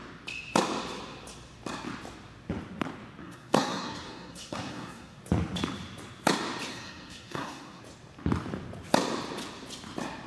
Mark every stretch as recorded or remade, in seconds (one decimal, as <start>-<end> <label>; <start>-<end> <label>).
0.0-3.2 recorded; 3.2-5.2 remade; 5.2-6.7 recorded; 6.7-7.8 remade; 7.8-10.3 recorded